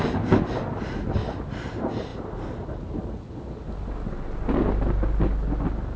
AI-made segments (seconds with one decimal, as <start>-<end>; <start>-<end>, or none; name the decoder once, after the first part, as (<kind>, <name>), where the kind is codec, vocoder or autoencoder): none